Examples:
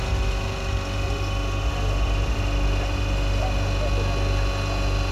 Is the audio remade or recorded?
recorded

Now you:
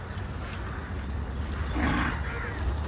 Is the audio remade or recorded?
recorded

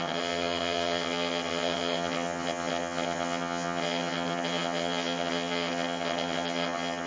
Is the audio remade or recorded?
remade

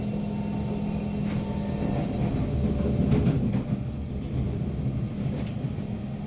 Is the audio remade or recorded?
recorded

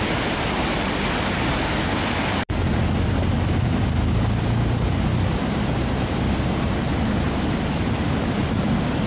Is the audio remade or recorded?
recorded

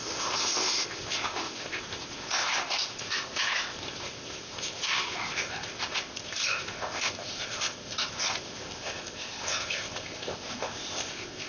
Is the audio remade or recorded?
remade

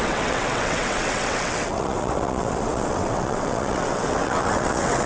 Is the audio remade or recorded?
remade